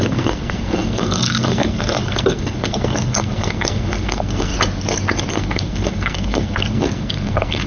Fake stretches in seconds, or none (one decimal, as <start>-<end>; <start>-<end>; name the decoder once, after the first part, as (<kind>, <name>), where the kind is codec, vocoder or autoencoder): 0.0-4.5 (codec, SNAC); 5.3-7.7